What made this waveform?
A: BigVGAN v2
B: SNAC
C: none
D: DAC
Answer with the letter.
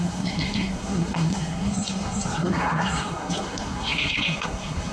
B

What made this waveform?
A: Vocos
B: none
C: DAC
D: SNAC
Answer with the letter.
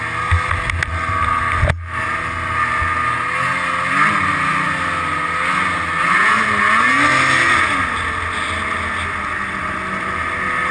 B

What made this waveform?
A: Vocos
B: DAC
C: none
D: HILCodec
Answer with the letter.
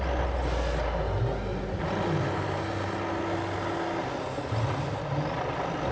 C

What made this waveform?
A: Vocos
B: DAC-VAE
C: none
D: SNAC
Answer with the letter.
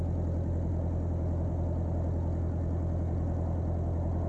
C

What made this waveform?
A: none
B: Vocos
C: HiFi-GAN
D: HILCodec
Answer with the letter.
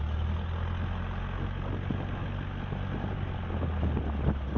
A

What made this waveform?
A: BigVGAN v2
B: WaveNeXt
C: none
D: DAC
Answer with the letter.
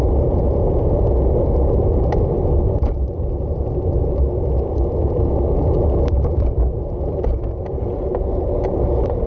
C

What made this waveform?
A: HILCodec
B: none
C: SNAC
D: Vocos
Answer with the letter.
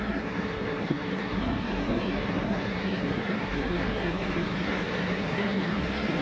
C